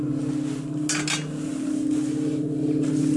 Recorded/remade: recorded